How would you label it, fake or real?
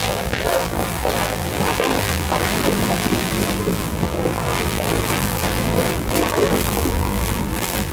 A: fake